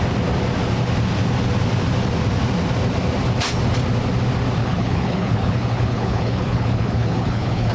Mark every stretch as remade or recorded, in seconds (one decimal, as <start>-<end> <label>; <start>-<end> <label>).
0.0-4.6 recorded; 4.6-7.7 remade